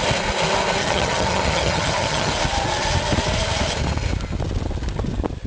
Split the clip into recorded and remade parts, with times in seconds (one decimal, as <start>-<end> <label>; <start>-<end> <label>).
0.0-0.8 recorded; 0.8-2.3 remade; 2.3-5.5 recorded